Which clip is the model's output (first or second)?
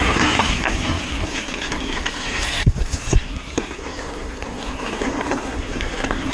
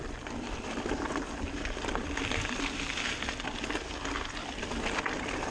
first